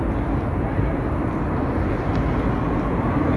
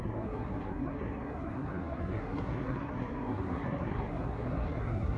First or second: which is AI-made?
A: second